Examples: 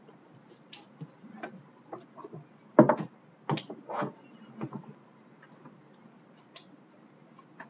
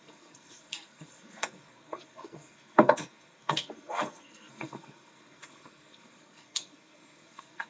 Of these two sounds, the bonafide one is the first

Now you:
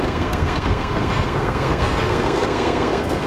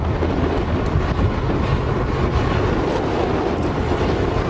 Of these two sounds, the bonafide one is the second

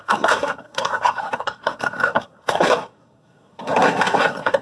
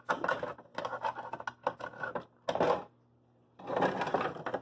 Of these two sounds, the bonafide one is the second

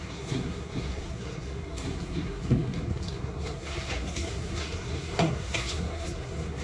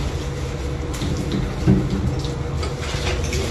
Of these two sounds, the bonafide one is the second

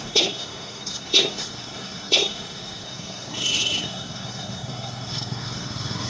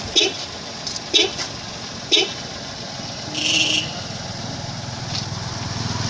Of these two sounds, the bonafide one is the second